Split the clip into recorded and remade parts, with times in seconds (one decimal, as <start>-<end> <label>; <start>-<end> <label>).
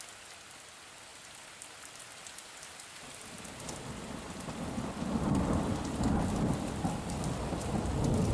0.0-8.3 recorded